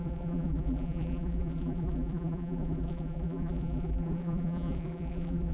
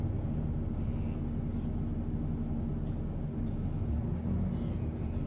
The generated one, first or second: first